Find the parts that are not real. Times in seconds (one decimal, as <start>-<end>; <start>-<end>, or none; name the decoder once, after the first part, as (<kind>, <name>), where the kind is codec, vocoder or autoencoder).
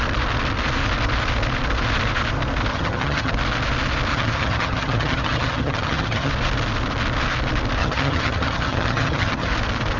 2.7-3.3 (vocoder, HiFi-GAN); 4.1-6.3; 7.8-9.5